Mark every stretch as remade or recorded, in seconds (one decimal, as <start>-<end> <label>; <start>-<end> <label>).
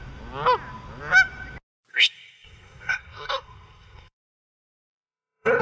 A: 0.0-1.9 recorded; 1.9-5.6 remade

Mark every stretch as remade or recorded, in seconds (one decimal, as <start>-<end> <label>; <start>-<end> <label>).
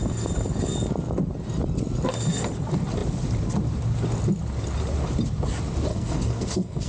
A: 0.0-5.9 recorded; 5.9-6.9 remade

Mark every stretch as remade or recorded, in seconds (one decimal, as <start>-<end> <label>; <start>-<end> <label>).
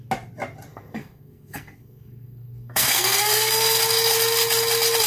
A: 0.0-0.7 recorded; 0.7-3.8 remade; 3.8-5.1 recorded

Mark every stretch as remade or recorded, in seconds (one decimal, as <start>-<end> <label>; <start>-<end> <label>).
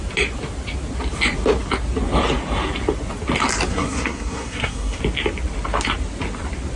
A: 0.0-3.7 recorded; 3.7-5.0 remade; 5.0-6.8 recorded